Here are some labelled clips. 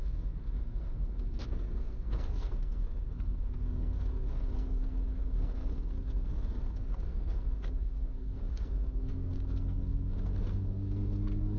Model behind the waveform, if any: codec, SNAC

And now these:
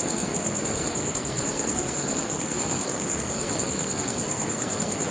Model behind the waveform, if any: codec, SNAC